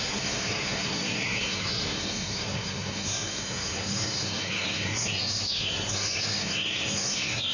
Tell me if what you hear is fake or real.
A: fake